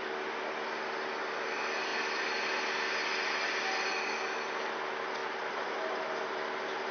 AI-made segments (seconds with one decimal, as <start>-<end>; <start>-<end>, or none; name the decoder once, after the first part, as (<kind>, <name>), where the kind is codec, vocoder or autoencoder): none